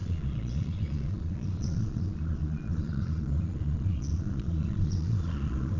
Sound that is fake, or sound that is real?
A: fake